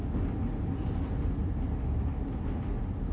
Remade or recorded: recorded